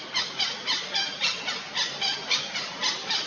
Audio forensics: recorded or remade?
recorded